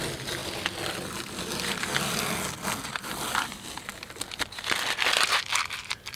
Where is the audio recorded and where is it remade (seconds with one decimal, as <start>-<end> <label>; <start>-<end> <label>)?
0.0-6.2 recorded